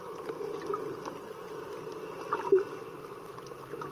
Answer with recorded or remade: recorded